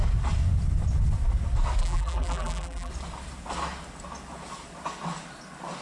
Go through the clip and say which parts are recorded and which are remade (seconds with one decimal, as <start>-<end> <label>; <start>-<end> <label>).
0.0-1.8 recorded; 1.8-2.9 remade; 2.9-5.8 recorded